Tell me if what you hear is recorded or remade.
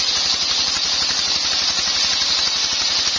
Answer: recorded